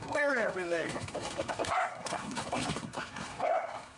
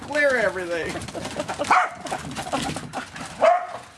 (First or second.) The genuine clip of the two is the second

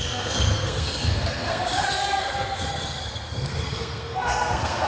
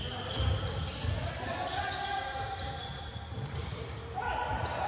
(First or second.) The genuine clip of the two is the second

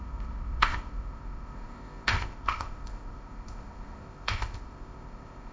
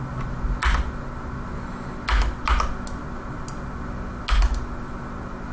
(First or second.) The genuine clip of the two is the second